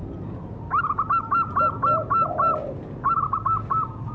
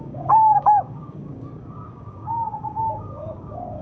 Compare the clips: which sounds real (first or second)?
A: first